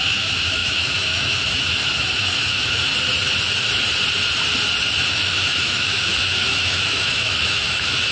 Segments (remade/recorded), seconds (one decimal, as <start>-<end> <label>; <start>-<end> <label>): 0.0-2.9 remade; 2.9-5.1 recorded; 5.1-8.1 remade